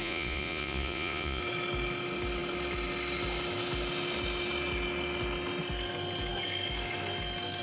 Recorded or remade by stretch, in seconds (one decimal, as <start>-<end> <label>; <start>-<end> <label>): 0.0-1.4 remade; 1.4-7.6 recorded